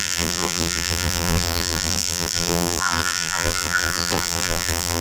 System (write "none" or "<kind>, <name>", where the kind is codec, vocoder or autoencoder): vocoder, BigVGAN v2